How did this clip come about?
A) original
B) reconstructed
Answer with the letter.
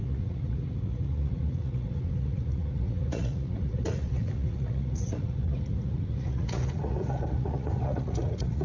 B